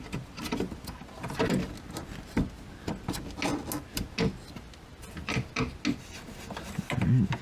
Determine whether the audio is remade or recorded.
recorded